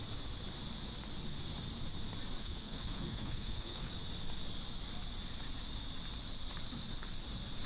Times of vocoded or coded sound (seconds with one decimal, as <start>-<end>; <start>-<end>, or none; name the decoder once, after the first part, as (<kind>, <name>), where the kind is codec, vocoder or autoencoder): 2.4-3.9 (codec, SNAC)